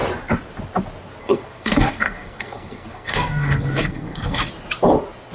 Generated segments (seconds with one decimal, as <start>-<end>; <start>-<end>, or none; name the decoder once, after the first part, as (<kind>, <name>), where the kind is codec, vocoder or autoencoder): 1.2-4.4 (codec, SNAC)